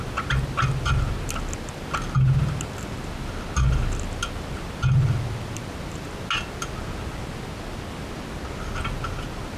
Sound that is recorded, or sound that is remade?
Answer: recorded